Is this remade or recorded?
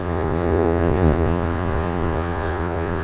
remade